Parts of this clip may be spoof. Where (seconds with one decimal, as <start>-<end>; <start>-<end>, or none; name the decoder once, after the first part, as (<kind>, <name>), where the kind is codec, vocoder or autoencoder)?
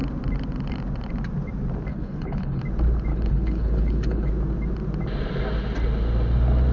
1.9-2.6 (codec, HILCodec); 3.1-4.3